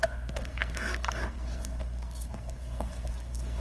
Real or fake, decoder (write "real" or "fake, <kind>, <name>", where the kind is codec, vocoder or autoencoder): fake, codec, SNAC